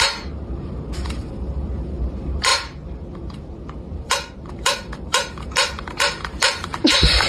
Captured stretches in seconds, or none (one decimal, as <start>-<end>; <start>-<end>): none